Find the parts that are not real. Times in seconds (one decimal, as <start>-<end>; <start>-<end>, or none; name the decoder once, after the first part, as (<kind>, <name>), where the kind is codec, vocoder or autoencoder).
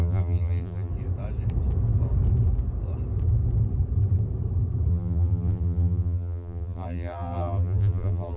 0.0-0.9 (vocoder, BigVGAN v2); 4.9-8.4